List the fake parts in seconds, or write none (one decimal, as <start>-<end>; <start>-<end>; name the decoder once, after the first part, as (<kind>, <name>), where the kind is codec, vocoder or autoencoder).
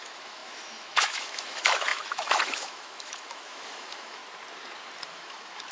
0.0-4.2 (autoencoder, DAC-VAE); 5.1-5.7